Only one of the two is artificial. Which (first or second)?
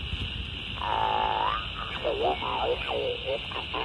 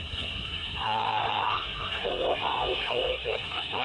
second